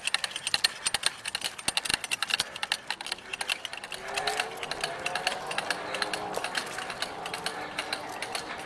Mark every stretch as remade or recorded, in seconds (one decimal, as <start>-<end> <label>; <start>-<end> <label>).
0.0-8.7 recorded